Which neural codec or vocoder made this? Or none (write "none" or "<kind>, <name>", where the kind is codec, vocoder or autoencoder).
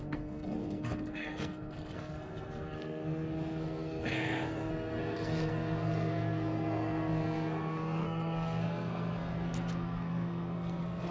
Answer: codec, SNAC